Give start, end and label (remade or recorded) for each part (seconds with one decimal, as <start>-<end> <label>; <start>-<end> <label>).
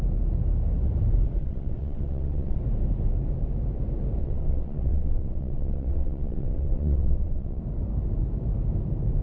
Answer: 0.0-1.4 recorded; 1.4-2.6 remade; 2.6-4.2 recorded; 4.2-7.6 remade; 7.6-9.2 recorded